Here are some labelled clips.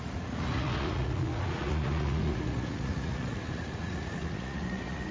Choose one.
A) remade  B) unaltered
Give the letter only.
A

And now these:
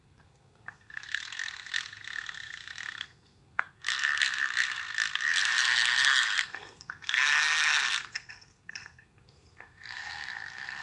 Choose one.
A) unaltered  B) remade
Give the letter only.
B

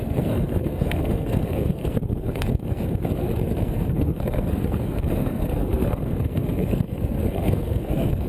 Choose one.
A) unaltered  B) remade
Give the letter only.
B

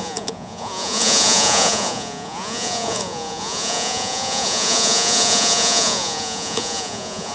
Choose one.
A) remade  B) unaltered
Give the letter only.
A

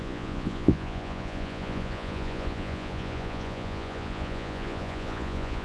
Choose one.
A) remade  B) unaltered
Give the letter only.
A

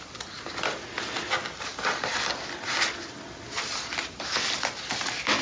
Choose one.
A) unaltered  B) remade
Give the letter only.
A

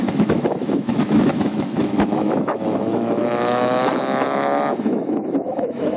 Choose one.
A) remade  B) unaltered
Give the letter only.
A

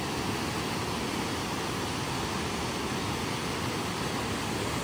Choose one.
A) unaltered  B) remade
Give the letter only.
A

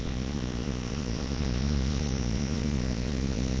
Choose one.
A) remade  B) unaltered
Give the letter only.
A